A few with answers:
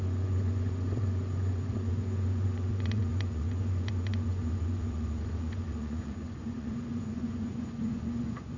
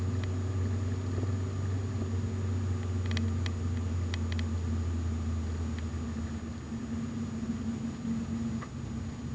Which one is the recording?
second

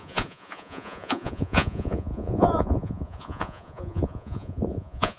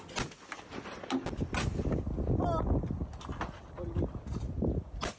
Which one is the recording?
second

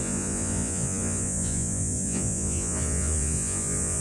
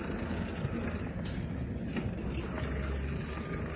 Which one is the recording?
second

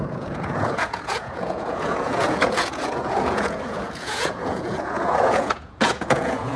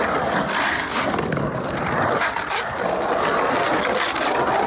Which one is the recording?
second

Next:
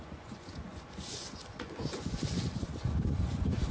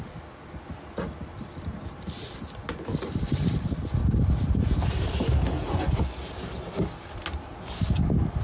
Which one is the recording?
second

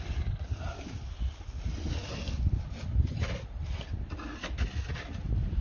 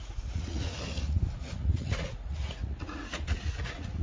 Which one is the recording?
first